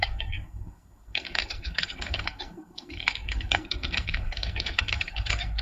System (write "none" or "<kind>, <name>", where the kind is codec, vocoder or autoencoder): codec, SNAC